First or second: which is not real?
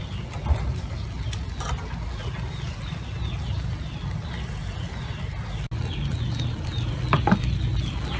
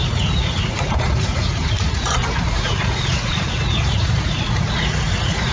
second